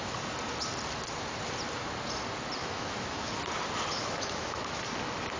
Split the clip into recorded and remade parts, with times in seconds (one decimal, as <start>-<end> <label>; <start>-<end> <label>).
0.0-2.6 recorded; 2.6-3.3 remade; 3.3-4.0 recorded; 4.0-4.8 remade; 4.8-5.4 recorded